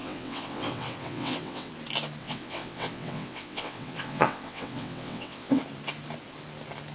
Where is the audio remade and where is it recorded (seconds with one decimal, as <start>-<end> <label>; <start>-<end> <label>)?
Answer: 0.0-1.7 remade; 1.7-2.2 recorded; 2.2-5.6 remade; 5.6-6.9 recorded